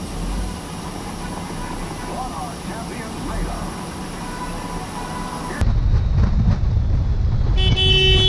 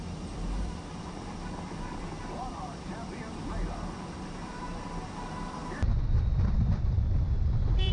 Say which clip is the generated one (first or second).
second